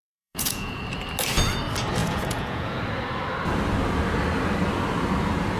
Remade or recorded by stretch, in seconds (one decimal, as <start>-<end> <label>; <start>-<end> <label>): 0.0-0.8 remade; 0.8-2.0 recorded; 2.0-2.8 remade; 2.8-5.6 recorded

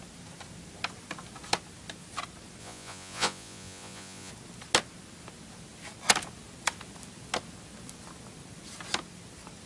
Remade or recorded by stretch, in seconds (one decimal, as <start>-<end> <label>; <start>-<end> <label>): 0.0-2.6 recorded; 2.6-4.3 remade; 4.3-9.7 recorded

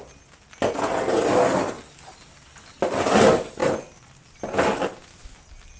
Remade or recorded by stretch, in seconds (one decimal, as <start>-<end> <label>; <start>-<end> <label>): 0.0-3.6 recorded; 3.6-4.3 remade; 4.3-5.8 recorded

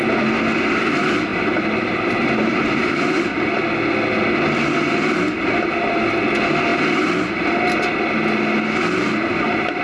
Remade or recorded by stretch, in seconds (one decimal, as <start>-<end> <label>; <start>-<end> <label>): 0.0-1.3 recorded; 1.3-3.2 remade; 3.2-9.8 recorded